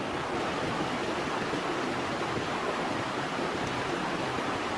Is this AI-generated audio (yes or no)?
no